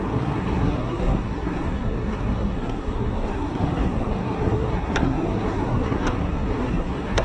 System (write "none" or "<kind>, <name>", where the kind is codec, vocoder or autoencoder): codec, SNAC